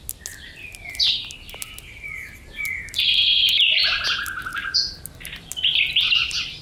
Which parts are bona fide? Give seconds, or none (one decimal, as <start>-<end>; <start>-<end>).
0.0-6.6